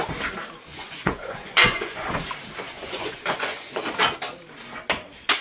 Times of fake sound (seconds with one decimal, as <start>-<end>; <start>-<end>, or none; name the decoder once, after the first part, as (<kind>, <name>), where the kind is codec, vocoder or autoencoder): 0.7-2.2 (vocoder, Vocos); 2.7-3.9